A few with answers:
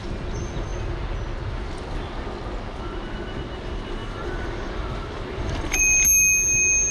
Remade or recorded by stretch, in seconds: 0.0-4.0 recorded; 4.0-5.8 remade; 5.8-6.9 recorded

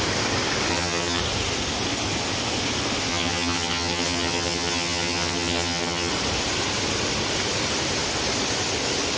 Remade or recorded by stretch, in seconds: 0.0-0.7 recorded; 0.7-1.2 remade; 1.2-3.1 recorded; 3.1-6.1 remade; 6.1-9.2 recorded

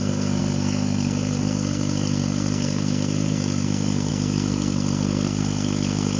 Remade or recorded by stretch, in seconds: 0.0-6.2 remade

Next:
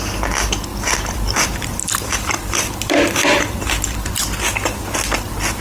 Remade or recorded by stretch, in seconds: 0.0-0.7 recorded; 0.7-4.1 remade; 4.1-4.5 recorded; 4.5-5.6 remade

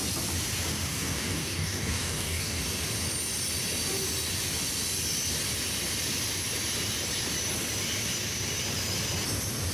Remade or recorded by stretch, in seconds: 0.0-0.9 recorded; 0.9-2.6 remade; 2.6-9.7 recorded